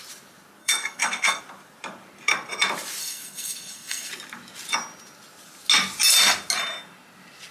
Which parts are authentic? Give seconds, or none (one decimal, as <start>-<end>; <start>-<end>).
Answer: 0.0-0.6; 1.4-3.0; 4.1-7.5